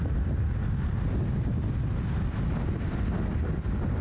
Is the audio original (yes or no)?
yes